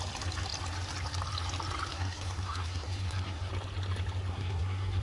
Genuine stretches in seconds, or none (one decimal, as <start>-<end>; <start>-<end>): 0.0-1.9; 3.5-4.3

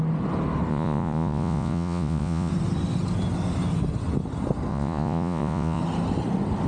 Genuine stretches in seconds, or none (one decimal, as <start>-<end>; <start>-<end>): 0.0-0.7; 2.5-4.7; 5.8-6.7

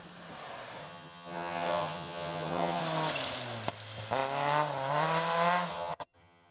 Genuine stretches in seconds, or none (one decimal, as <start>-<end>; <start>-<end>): 0.0-0.8; 2.8-5.7

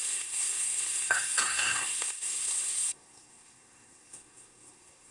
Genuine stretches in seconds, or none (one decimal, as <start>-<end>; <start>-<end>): none

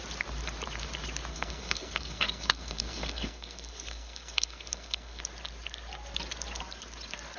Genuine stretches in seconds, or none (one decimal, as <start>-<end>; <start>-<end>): 0.0-1.3; 5.2-7.4

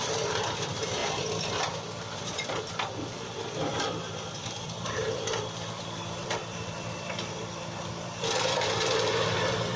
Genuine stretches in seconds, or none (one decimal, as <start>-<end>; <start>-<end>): none

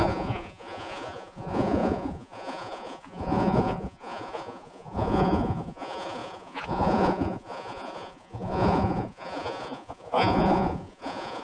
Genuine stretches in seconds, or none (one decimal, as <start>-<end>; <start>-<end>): none